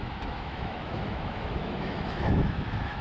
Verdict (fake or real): fake